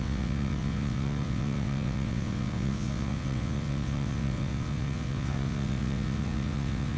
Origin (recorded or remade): remade